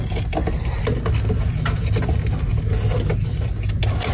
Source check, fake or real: real